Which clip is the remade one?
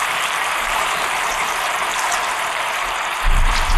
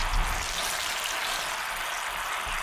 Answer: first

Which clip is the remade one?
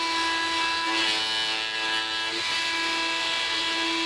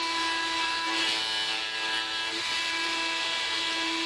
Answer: second